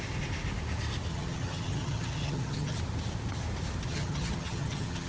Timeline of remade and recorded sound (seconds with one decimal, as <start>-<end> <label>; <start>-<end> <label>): 0.0-1.1 recorded; 1.1-2.8 remade; 2.8-3.9 recorded; 3.9-5.1 remade